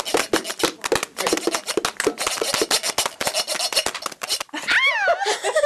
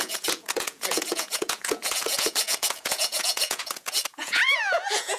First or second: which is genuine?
first